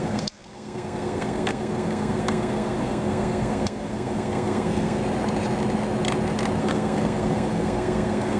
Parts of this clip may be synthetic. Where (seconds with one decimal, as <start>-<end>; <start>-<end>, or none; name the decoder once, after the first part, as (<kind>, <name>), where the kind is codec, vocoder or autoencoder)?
0.0-5.0 (codec, SNAC); 6.6-8.4